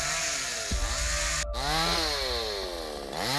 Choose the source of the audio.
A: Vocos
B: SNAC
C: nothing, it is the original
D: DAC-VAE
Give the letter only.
C